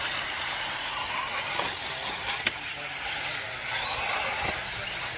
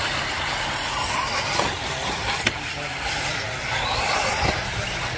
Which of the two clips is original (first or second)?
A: first